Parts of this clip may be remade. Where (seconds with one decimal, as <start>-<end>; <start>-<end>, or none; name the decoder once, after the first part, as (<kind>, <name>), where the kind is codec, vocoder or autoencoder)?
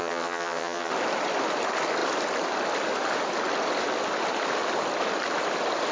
0.0-0.9 (vocoder, HiFi-GAN)